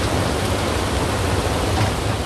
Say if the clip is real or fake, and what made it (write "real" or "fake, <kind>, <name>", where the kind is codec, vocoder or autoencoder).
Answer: real